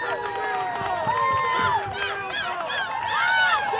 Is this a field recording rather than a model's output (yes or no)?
yes